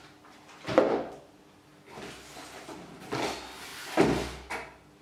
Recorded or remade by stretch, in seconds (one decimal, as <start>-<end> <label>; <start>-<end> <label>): 0.0-5.0 recorded

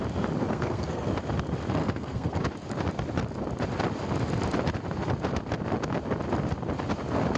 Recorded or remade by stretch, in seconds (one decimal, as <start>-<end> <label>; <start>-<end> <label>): 0.0-0.5 recorded; 0.5-1.1 remade; 1.1-1.8 recorded; 1.8-2.4 remade; 2.4-7.4 recorded